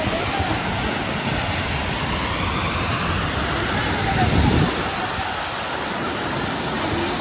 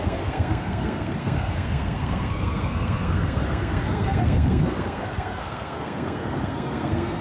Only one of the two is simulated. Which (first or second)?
second